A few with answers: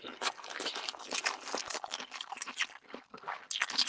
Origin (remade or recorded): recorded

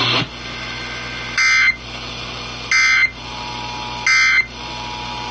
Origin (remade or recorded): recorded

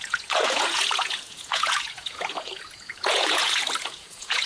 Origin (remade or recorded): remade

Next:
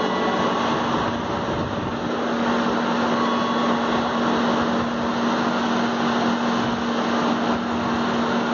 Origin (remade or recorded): recorded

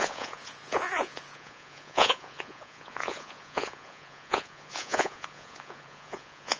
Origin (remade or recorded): remade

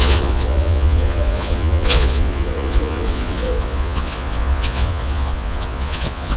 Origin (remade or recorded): remade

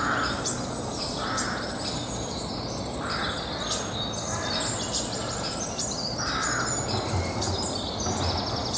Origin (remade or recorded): recorded